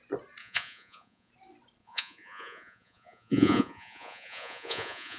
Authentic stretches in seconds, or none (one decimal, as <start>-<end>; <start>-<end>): 0.0-0.4; 1.3-1.8